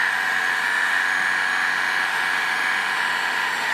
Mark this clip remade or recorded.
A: remade